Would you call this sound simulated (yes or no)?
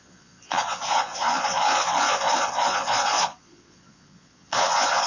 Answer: yes